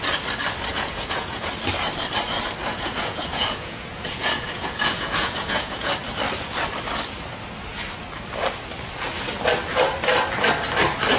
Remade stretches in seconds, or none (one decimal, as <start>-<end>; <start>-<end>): 0.7-1.5; 2.7-5.9